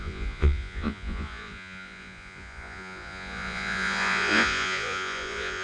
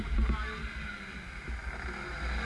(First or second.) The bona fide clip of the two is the second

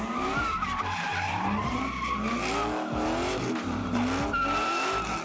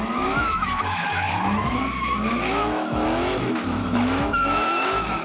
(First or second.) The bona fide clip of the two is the first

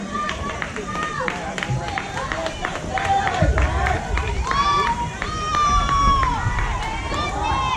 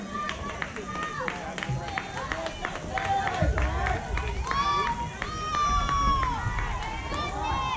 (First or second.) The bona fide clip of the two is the second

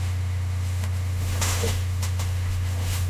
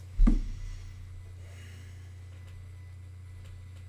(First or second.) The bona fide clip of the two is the second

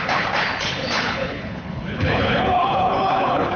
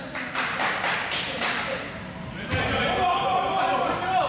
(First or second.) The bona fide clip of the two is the second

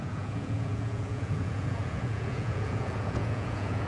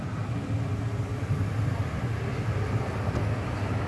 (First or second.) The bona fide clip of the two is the second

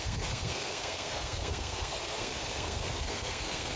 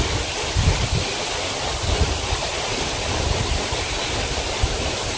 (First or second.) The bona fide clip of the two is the second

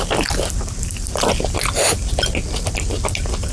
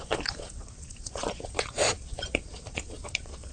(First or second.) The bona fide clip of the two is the first